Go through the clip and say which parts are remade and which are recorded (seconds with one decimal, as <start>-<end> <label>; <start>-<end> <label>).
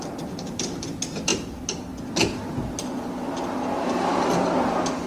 0.0-1.3 remade; 1.3-4.4 recorded; 4.4-5.1 remade